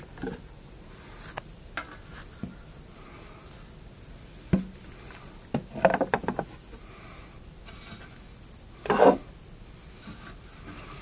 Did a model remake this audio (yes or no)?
no